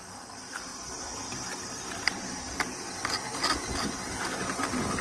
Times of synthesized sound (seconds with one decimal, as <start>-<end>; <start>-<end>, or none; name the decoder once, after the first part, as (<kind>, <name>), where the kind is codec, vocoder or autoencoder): none